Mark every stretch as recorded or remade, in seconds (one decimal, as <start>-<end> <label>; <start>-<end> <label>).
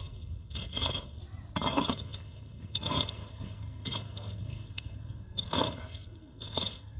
0.0-1.2 remade; 1.2-1.7 recorded; 1.7-7.0 remade